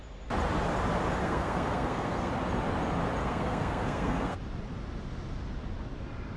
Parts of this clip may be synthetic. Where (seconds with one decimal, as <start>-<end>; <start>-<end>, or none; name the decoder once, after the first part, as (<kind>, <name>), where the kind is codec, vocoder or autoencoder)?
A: 1.2-2.3 (codec, SNAC); 3.2-4.4